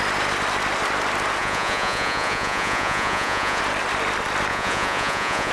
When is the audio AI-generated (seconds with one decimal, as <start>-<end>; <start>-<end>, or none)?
1.4-3.6; 4.5-5.5